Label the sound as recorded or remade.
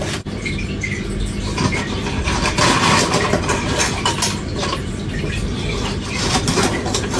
remade